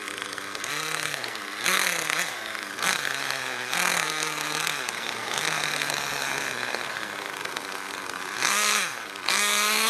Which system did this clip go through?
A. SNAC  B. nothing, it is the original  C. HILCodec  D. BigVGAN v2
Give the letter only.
A